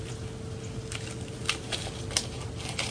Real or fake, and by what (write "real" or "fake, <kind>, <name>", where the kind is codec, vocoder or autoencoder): real